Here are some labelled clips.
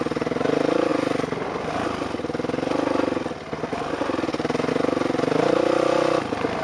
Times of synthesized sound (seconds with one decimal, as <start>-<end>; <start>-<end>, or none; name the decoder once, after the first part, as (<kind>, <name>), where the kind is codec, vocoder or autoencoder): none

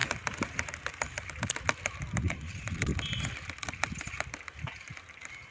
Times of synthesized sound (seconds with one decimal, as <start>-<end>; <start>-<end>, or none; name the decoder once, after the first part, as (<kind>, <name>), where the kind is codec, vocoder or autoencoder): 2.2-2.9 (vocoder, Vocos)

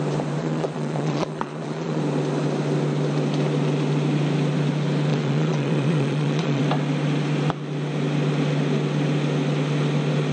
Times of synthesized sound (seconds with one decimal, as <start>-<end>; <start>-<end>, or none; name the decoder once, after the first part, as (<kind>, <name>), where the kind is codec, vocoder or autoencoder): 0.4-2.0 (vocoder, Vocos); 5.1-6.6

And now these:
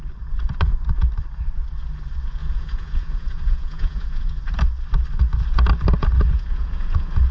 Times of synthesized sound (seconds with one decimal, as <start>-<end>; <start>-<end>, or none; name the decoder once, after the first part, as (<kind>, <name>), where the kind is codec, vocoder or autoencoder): 2.4-4.4 (vocoder, Vocos); 6.0-7.3

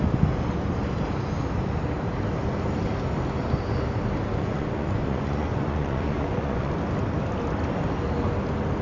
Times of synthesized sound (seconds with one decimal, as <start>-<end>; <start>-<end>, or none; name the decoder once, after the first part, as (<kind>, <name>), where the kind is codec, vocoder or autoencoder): 4.3-6.7 (vocoder, Vocos)

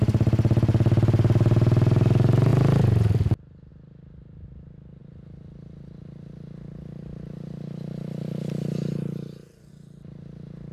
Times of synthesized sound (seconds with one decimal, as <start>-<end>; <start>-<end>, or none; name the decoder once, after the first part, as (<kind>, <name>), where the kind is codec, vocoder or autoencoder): none

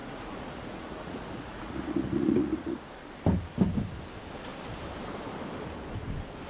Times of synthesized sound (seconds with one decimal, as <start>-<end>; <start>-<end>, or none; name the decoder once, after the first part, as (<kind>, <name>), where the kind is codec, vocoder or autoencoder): 0.0-2.8 (vocoder, Vocos)